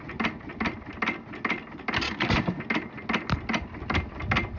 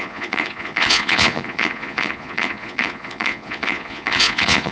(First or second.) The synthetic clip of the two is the second